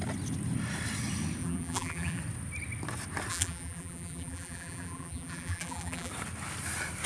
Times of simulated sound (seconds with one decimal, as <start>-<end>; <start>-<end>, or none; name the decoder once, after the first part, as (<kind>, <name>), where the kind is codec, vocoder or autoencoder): 1.4-2.2 (vocoder, BigVGAN v2); 3.3-6.1